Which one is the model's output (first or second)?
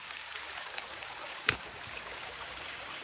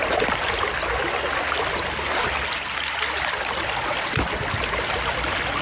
first